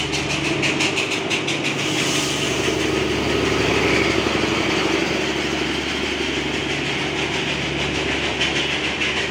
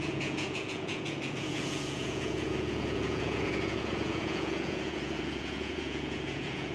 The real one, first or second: first